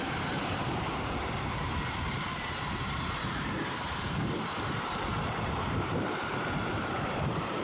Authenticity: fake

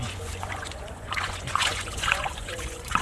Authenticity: fake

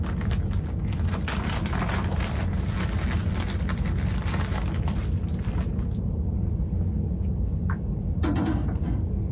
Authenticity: real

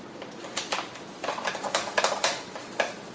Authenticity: real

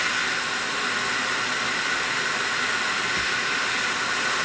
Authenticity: real